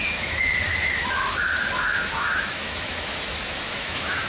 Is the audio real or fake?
fake